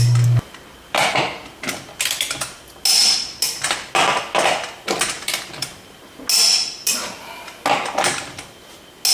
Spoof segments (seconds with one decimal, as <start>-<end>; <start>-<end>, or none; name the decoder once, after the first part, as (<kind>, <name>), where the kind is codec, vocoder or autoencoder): none